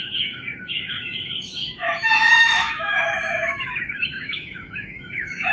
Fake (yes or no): yes